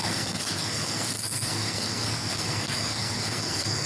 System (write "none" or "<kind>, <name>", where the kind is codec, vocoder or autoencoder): codec, SNAC